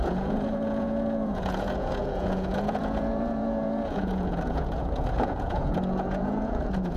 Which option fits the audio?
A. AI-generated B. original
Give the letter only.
A